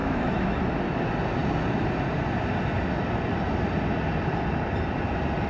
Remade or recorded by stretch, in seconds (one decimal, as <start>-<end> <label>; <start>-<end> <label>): 0.0-0.7 remade; 0.7-5.5 recorded